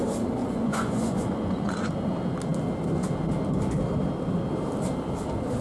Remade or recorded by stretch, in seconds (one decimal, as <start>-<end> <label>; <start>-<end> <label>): 0.0-0.4 recorded; 0.4-1.9 remade; 1.9-5.6 recorded